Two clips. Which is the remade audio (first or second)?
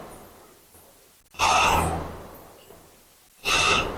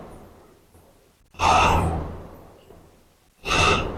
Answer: second